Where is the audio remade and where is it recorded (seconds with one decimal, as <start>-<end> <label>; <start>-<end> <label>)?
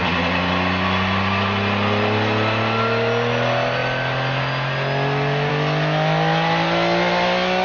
0.0-7.6 recorded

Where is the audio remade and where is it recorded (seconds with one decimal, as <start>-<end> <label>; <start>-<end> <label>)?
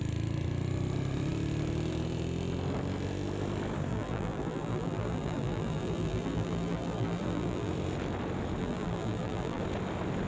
0.0-3.9 recorded; 3.9-7.7 remade; 7.7-8.6 recorded; 8.6-9.6 remade; 9.6-10.3 recorded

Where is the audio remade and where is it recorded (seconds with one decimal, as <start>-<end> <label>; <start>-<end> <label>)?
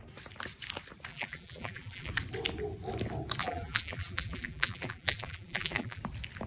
0.0-1.1 recorded; 1.1-2.1 remade; 2.1-3.4 recorded; 3.4-6.0 remade; 6.0-6.5 recorded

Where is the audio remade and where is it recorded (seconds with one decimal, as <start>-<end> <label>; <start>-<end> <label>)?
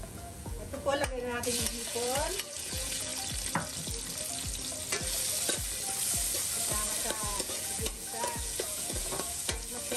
0.0-3.1 remade; 3.1-7.2 recorded; 7.2-10.0 remade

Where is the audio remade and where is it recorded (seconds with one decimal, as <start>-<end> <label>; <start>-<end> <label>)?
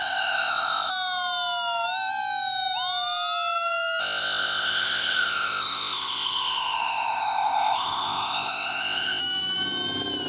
0.0-0.9 remade; 0.9-4.0 recorded; 4.0-9.2 remade; 9.2-10.3 recorded